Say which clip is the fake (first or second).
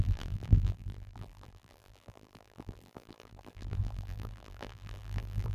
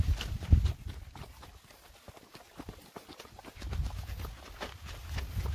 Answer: first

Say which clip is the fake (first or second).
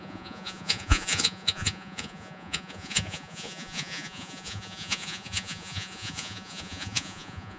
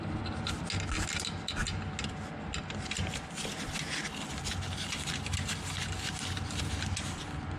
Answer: first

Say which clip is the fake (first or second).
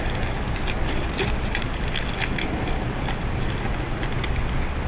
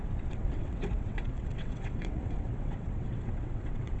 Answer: second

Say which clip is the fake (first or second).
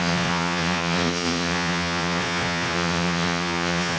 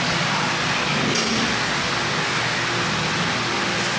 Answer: first